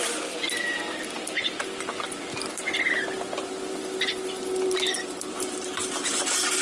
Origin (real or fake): fake